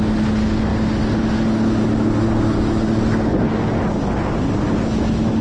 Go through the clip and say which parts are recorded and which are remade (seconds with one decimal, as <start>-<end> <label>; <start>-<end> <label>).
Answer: 0.0-5.4 recorded